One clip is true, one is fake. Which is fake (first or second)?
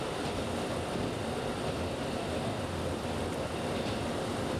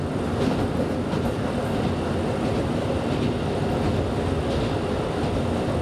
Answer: first